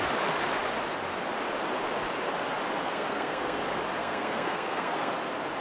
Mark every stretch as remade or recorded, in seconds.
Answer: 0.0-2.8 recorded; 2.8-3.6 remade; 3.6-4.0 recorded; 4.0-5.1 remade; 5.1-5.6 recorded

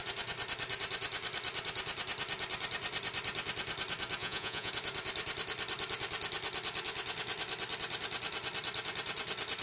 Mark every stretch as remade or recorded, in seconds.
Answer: 0.0-4.2 recorded; 4.2-4.7 remade; 4.7-9.6 recorded

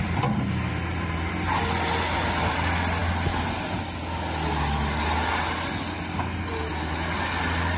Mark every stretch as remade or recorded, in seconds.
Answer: 0.0-7.8 recorded

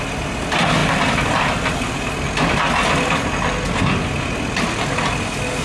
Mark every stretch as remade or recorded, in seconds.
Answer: 0.0-5.6 recorded

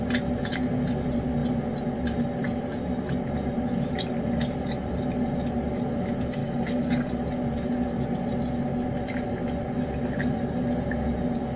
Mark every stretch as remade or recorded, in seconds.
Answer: 0.0-6.4 recorded; 6.4-7.1 remade; 7.1-11.6 recorded

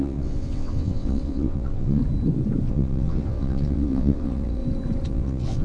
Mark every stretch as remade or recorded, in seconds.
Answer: 0.0-2.0 remade; 2.0-2.7 recorded; 2.7-4.6 remade; 4.6-5.1 recorded; 5.1-5.6 remade

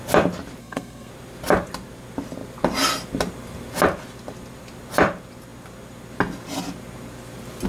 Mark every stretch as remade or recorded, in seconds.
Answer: 0.0-0.6 recorded; 0.6-1.1 remade; 1.1-7.7 recorded